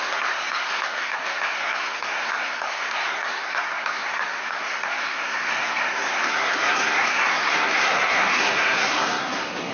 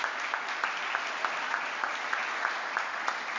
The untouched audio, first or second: second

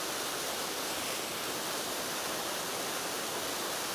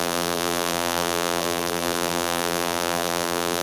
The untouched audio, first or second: first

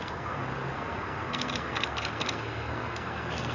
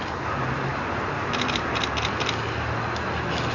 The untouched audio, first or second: second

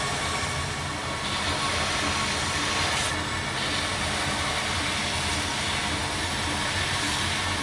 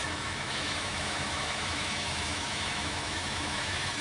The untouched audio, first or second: first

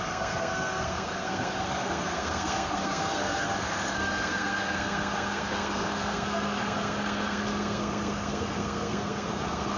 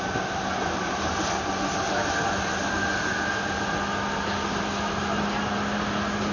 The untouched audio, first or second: second